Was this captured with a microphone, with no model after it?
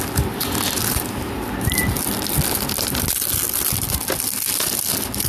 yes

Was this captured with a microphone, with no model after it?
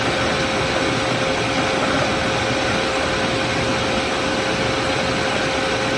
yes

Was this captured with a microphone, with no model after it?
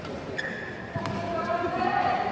yes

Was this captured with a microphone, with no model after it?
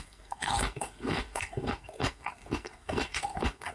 no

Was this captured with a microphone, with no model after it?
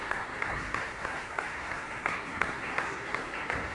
no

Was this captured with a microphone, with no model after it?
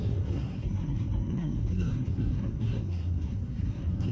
no